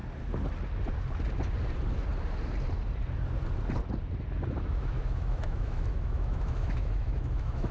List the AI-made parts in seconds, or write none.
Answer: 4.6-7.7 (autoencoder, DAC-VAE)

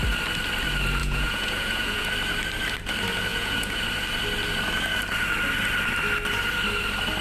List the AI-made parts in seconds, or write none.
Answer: 1.0-2.1 (vocoder, Vocos); 3.3-3.8